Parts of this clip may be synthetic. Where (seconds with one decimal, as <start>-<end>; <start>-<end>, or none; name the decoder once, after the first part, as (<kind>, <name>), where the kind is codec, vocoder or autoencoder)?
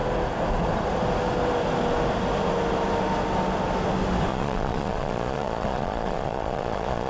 4.3-7.1 (vocoder, Vocos)